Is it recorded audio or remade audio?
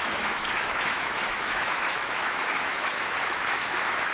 remade